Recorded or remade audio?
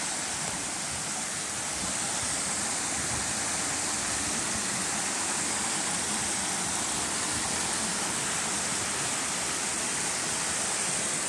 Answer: recorded